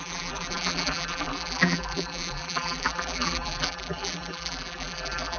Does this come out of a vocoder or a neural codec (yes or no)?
yes